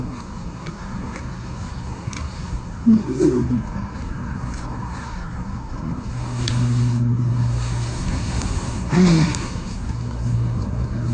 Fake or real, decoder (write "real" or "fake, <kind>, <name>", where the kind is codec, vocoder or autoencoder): fake, codec, SNAC